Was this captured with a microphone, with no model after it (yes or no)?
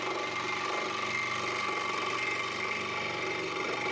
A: yes